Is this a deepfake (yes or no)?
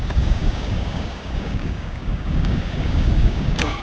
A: yes